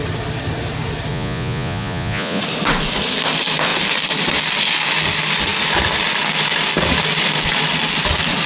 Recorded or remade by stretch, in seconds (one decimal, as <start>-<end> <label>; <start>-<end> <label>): 0.0-1.1 recorded; 1.1-2.4 remade; 2.4-8.5 recorded